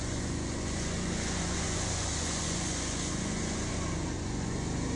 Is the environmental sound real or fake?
fake